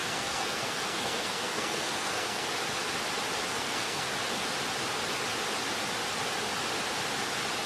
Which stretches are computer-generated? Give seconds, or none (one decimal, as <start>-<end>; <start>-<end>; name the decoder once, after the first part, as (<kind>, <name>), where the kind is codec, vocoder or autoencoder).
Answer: 0.0-2.5 (codec, SNAC); 3.5-4.1